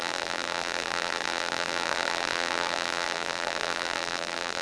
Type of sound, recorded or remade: remade